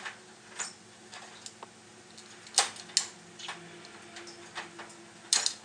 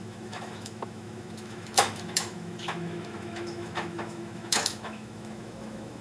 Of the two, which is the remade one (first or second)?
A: second